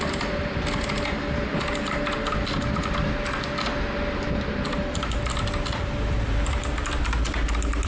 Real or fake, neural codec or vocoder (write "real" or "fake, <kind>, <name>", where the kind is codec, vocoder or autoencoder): real